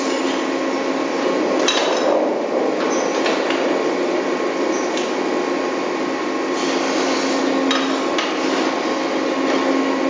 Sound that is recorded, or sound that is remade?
recorded